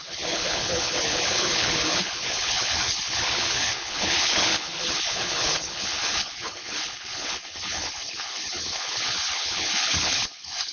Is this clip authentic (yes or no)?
no